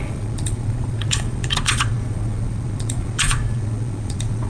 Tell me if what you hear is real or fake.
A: fake